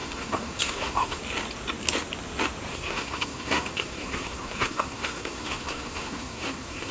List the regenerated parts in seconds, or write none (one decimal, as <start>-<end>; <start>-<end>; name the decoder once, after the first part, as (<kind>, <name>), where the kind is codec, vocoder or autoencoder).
0.0-1.2 (codec, SNAC); 2.7-6.9